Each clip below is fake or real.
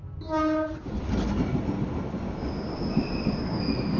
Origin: real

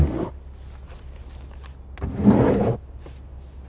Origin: real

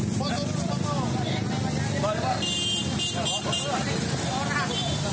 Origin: real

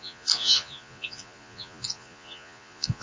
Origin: fake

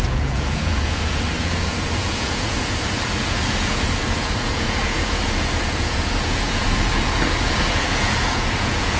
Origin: fake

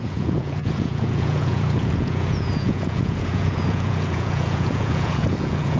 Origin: fake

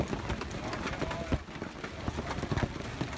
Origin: real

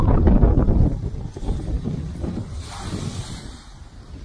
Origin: real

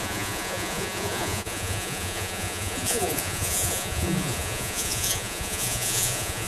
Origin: fake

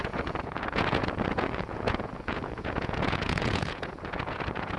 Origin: fake